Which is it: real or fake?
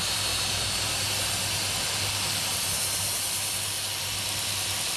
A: real